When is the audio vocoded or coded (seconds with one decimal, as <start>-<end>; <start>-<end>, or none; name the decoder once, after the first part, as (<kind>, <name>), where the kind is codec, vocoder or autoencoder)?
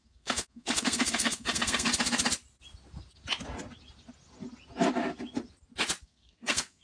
0.0-1.9 (codec, SNAC); 6.0-6.8